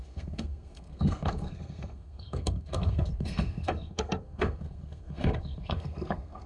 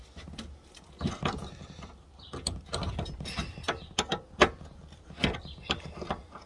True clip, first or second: second